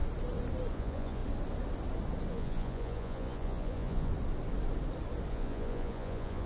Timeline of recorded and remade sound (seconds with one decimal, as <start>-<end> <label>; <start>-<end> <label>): 0.0-0.7 recorded; 0.7-1.2 remade; 1.2-2.3 recorded; 2.3-4.1 remade; 4.1-5.3 recorded; 5.3-6.5 remade